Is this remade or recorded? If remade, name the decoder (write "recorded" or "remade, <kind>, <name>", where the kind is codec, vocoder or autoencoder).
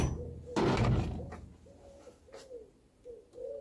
recorded